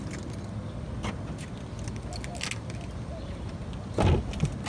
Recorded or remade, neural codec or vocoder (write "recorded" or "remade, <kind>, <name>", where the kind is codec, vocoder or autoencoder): recorded